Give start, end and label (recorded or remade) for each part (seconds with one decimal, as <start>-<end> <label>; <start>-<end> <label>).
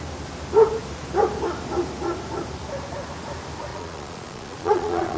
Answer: 0.0-3.7 recorded; 3.7-5.2 remade